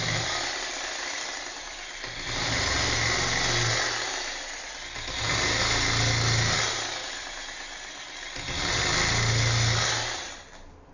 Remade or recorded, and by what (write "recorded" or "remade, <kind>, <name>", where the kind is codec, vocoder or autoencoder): recorded